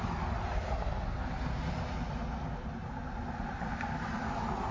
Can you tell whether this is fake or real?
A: real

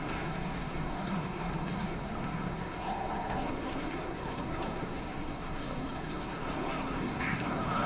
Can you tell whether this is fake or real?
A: fake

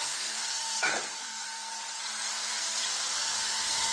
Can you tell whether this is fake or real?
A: fake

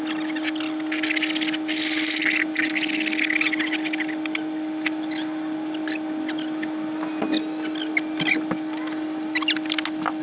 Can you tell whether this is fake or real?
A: real